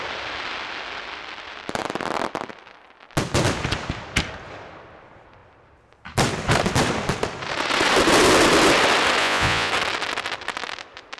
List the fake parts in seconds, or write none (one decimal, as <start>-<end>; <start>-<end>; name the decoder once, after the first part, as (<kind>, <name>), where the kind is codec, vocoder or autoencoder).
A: 9.2-9.7 (vocoder, Vocos)